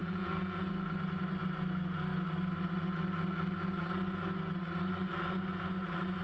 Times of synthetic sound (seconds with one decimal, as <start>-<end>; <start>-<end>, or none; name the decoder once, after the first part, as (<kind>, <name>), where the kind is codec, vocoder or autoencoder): 0.0-0.7 (vocoder, Vocos)